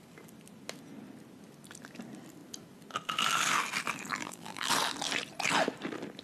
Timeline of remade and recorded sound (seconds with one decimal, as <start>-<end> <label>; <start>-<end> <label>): 0.0-4.1 recorded; 4.1-4.7 remade; 4.7-6.2 recorded